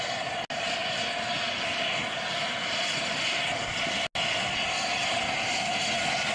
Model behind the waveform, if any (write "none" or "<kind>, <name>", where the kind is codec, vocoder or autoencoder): none